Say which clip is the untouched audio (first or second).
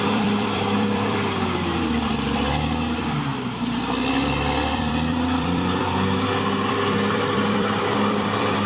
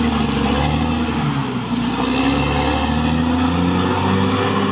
second